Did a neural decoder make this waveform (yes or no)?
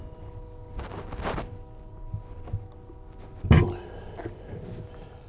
no